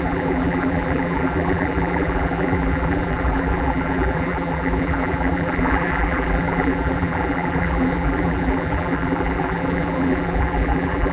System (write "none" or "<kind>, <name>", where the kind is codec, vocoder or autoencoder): vocoder, BigVGAN v2